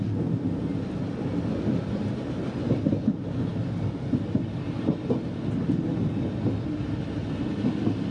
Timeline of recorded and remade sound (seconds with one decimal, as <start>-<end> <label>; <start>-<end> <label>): 0.0-8.1 recorded